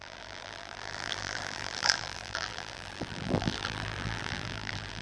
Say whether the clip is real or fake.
fake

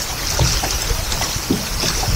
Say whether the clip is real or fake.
real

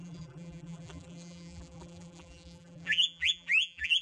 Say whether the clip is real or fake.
fake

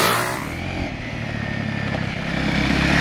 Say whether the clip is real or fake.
real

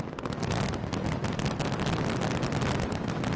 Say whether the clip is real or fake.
real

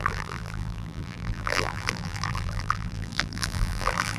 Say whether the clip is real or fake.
fake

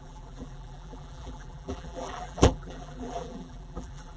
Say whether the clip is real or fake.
fake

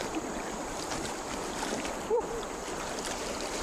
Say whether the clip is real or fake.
fake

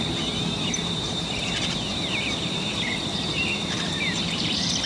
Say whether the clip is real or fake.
fake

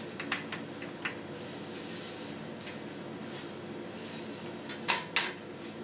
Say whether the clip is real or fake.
real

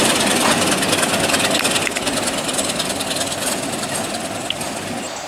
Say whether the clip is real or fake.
real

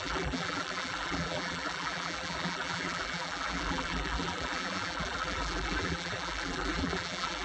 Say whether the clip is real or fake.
fake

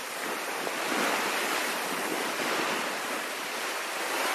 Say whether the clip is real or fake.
real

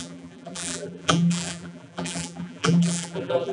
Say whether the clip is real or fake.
fake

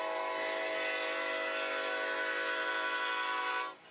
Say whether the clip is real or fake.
real